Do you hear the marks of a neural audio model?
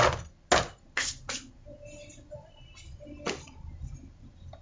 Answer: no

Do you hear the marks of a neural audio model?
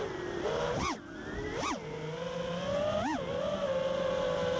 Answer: no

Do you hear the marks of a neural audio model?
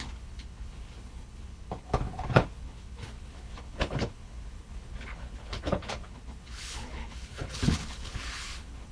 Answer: yes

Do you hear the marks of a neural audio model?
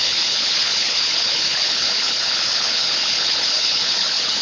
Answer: yes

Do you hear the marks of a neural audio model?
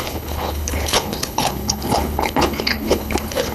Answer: yes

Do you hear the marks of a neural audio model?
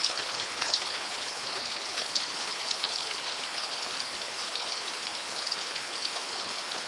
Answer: yes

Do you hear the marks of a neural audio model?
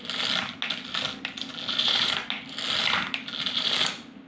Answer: no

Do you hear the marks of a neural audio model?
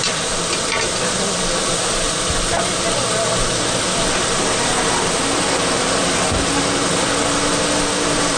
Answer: no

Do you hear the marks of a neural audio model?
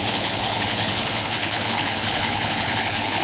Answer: yes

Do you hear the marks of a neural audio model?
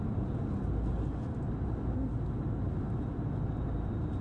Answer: no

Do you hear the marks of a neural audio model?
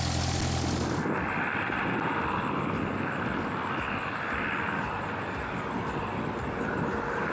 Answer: no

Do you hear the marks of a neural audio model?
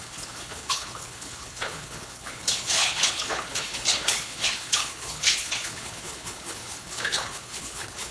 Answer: yes